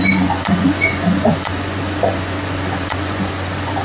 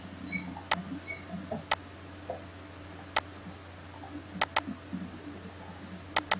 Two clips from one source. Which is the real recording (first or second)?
second